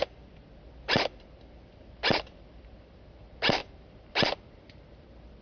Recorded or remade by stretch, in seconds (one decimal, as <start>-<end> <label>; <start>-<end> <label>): 0.0-5.4 recorded